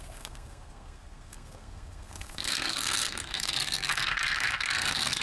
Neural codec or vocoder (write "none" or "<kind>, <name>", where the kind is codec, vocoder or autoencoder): codec, SNAC